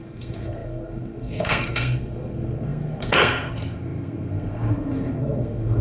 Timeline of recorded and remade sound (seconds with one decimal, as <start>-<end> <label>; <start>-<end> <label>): 0.0-5.8 remade